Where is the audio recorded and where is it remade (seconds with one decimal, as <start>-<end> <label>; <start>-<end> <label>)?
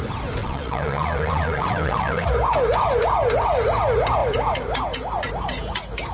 0.0-0.4 recorded; 0.4-2.3 remade; 2.3-6.1 recorded